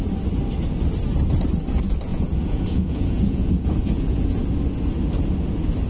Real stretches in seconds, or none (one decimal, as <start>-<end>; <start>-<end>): 0.0-2.1; 4.4-5.9